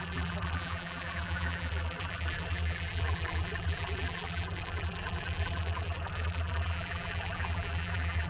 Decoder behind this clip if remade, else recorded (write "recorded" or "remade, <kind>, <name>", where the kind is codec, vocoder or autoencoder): remade, vocoder, BigVGAN v2